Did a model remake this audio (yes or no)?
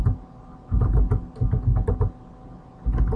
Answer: no